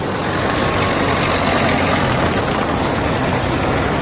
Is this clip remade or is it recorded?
recorded